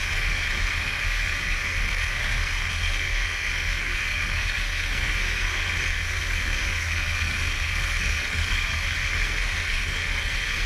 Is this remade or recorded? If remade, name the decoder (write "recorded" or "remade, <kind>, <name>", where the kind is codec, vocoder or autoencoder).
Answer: remade, codec, SNAC